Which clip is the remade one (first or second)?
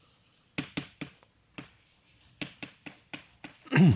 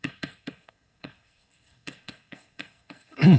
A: second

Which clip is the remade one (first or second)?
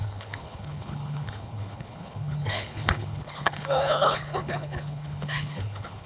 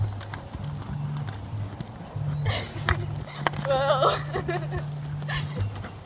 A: first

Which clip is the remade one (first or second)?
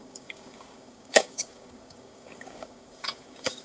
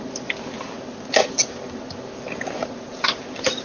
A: first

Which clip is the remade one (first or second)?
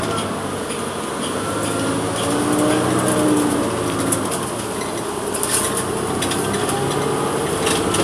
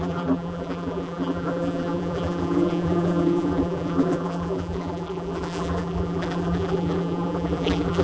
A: second